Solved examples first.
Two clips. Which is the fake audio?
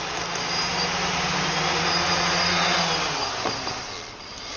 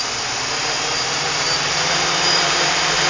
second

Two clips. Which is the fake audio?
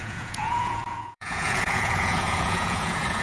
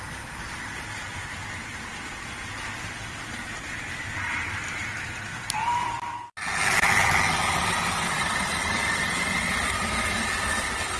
first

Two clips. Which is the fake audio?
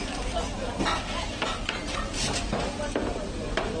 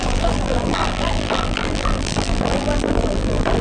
second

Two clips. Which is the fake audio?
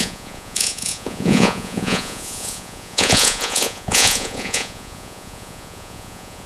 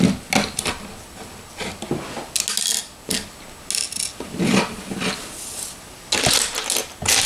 first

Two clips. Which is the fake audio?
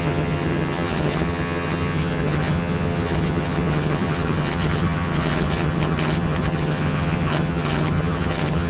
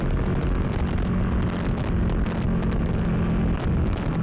first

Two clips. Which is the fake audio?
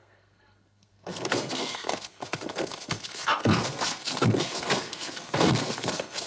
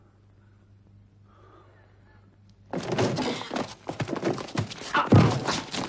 first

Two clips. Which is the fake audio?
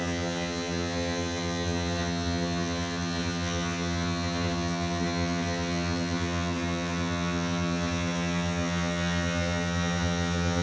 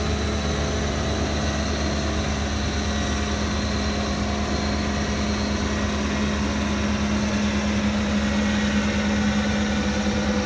first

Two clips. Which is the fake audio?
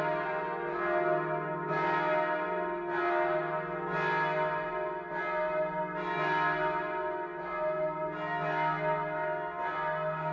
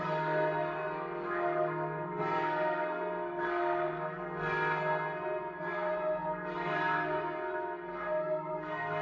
second